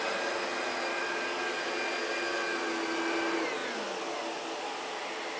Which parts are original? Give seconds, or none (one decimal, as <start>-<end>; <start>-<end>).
0.0-5.4